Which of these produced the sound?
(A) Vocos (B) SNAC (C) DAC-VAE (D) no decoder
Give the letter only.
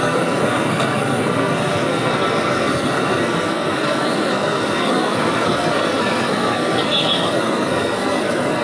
B